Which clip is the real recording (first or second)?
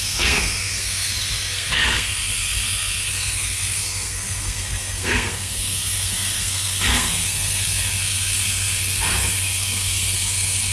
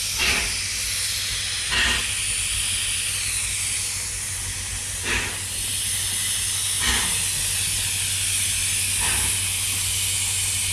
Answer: second